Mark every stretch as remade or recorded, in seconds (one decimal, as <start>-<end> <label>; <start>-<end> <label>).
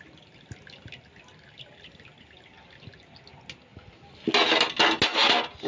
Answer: 0.0-5.7 recorded